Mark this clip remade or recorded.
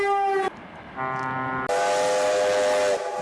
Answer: recorded